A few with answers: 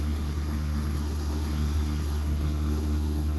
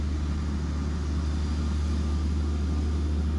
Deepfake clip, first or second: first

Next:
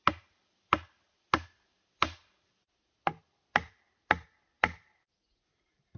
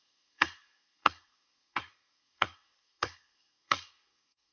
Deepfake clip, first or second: second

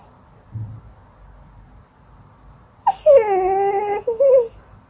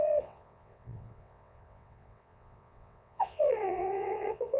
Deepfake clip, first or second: second